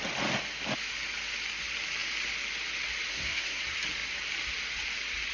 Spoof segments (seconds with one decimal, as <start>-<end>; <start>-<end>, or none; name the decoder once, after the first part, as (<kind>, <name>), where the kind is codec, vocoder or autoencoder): 3.1-3.6 (codec, SNAC)

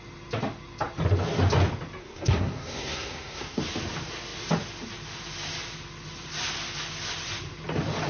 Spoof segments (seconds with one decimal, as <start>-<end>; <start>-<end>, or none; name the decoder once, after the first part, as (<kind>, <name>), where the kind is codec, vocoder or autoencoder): 2.0-3.6 (codec, SNAC)

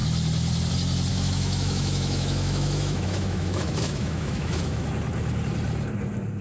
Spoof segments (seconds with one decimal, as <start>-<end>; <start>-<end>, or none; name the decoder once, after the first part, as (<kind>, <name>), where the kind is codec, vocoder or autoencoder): 1.1-4.9 (autoencoder, DAC-VAE)

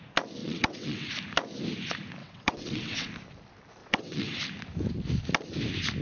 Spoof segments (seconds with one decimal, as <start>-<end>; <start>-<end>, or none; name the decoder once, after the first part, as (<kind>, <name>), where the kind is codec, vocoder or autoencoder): 0.4-1.1 (vocoder, WaveNeXt); 2.2-3.1; 3.8-4.4

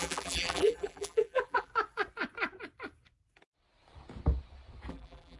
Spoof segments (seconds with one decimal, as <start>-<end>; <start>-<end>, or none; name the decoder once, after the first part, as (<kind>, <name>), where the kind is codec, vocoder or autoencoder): 0.0-1.7 (vocoder, BigVGAN v2); 4.9-5.4

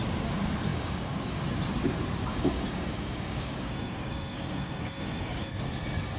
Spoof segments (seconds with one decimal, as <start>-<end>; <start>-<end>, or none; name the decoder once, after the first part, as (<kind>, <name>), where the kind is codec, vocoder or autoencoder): 0.7-1.4 (codec, DAC); 2.3-5.5

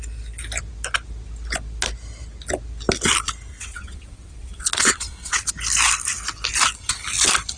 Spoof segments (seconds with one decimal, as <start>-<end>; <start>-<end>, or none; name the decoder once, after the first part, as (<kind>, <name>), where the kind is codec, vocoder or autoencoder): 3.5-5.5 (vocoder, WaveNeXt)